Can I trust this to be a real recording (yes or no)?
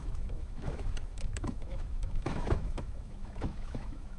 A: no